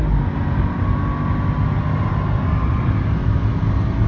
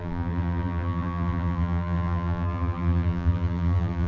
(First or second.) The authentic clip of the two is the first